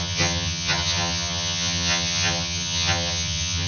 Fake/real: fake